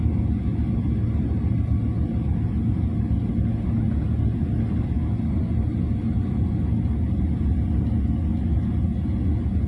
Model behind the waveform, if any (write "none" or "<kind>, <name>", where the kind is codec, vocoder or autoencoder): none